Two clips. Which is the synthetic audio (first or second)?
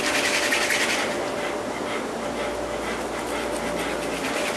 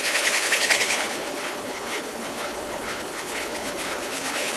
second